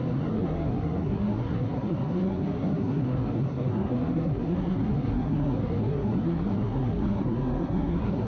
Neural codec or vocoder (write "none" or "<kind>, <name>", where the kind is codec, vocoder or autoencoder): codec, SNAC